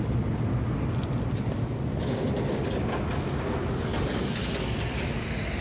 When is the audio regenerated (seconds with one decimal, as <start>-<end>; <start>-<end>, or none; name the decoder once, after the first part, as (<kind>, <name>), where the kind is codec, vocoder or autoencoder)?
2.2-2.7 (vocoder, BigVGAN v2); 3.9-5.1